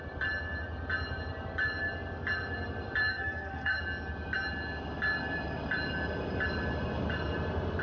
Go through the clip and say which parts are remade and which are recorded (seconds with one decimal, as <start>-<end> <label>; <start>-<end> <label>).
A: 0.0-3.1 recorded; 3.1-3.8 remade; 3.8-7.8 recorded